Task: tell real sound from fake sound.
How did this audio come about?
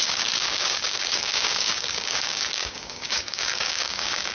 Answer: fake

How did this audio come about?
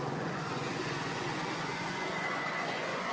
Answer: fake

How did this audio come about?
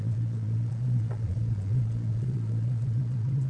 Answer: fake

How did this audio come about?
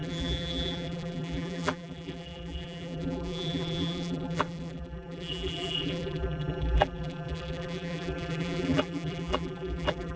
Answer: fake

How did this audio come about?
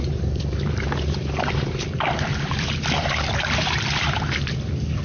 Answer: fake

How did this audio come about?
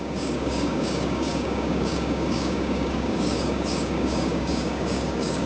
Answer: fake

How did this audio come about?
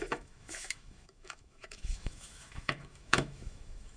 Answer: fake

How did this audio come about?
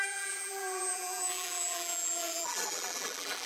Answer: fake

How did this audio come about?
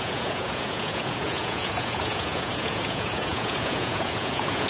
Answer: fake